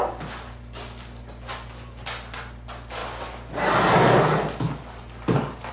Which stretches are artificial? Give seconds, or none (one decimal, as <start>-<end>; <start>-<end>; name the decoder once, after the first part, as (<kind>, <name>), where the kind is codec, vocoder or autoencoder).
none